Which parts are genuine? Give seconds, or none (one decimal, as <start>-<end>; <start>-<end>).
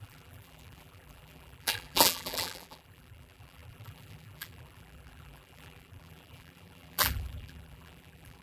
none